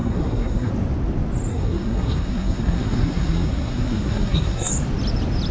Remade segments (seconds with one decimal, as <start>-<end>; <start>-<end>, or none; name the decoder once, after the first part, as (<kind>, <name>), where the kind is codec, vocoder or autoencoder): 0.0-0.7 (codec, SNAC); 1.5-4.7